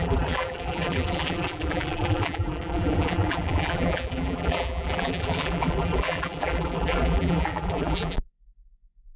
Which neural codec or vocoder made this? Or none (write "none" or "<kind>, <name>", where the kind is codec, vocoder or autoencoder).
vocoder, BigVGAN v2